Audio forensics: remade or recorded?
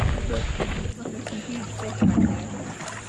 recorded